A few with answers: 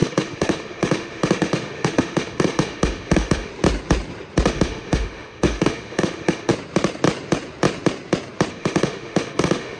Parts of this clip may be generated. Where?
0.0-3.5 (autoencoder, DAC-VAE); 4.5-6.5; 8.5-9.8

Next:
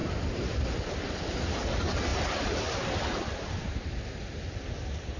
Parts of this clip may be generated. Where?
0.0-1.3 (vocoder, BigVGAN v2); 2.1-5.2

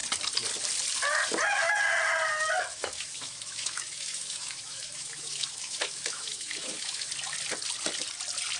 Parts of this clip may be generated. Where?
2.7-7.1 (autoencoder, DAC-VAE)

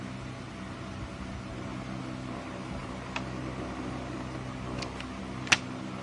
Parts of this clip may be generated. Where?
none

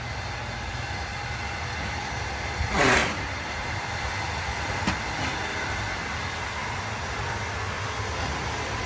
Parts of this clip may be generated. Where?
3.0-3.9 (vocoder, BigVGAN v2)

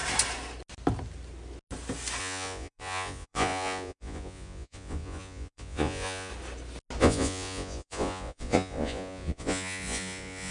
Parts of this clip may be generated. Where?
2.2-6.3 (vocoder, Vocos); 7.0-10.5